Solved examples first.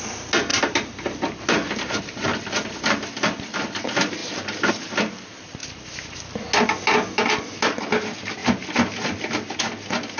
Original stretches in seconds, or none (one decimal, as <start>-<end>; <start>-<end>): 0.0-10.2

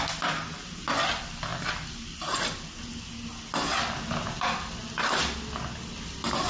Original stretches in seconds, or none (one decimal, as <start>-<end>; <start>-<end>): 0.0-6.5

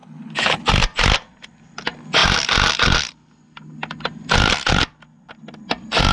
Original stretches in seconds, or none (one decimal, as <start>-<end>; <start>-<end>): 0.7-6.1

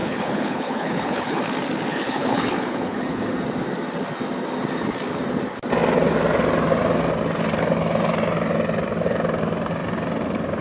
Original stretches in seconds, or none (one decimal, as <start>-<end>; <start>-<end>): 1.4-1.9; 3.2-10.6

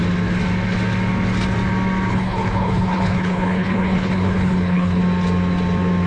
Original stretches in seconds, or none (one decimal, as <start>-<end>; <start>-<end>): 0.0-2.1; 5.0-6.1

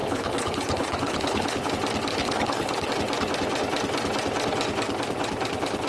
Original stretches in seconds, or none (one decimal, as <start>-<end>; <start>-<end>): 1.7-2.1; 2.9-5.9